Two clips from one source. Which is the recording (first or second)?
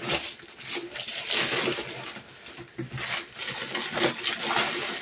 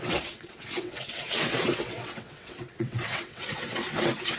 first